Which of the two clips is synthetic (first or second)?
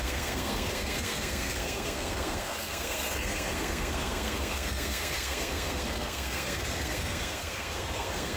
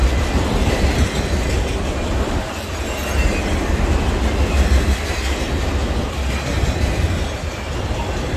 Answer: first